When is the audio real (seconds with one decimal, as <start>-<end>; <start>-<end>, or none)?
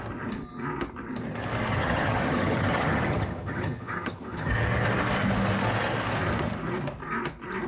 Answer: 0.0-1.7; 4.5-7.7